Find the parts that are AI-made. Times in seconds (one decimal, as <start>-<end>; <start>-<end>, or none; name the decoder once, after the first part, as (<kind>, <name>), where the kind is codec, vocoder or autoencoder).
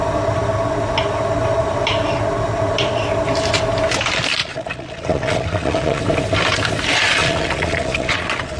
4.4-6.0 (vocoder, Vocos); 7.2-8.6